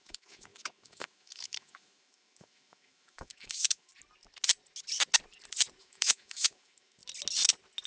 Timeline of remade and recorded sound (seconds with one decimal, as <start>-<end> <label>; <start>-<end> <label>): 0.0-3.9 remade; 3.9-5.8 recorded; 5.8-7.0 remade; 7.0-7.9 recorded